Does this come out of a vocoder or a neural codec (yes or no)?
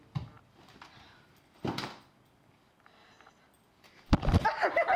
no